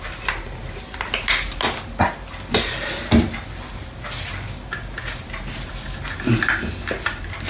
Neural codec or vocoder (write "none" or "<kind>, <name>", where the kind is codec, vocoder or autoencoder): none